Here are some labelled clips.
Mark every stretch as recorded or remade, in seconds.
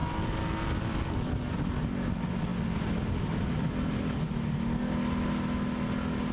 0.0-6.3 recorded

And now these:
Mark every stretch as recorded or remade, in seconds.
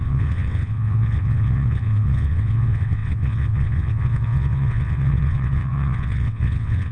0.0-6.9 remade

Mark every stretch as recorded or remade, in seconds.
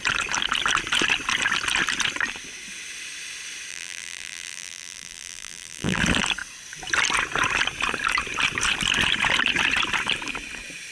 0.0-3.7 recorded; 3.7-6.0 remade; 6.0-10.9 recorded